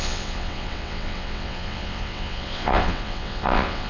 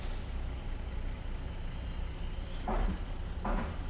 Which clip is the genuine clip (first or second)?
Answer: second